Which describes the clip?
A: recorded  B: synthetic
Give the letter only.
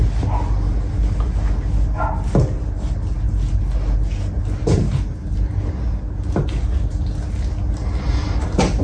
A